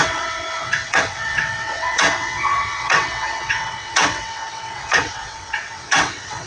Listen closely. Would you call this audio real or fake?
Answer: fake